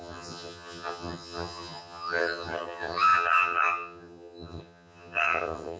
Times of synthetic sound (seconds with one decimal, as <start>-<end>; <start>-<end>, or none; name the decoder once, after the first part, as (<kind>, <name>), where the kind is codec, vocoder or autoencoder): 0.0-5.8 (vocoder, HiFi-GAN)